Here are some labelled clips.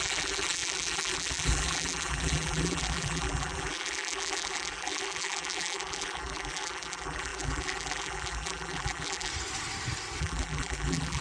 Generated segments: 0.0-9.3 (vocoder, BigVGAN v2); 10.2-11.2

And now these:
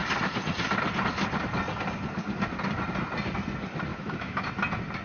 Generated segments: 3.9-4.5 (autoencoder, DAC-VAE)

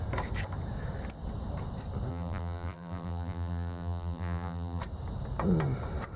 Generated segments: 2.1-4.8 (vocoder, BigVGAN v2)

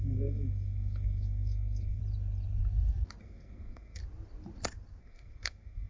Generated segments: 0.0-2.0 (codec, SNAC); 3.2-4.0; 5.0-5.9

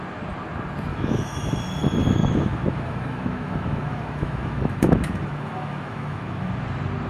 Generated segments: 0.9-1.5 (autoencoder, DAC-VAE); 2.2-6.5

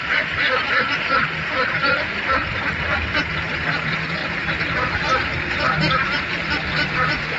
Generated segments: 0.0-7.4 (vocoder, BigVGAN v2)

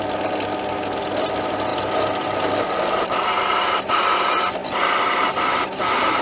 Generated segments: none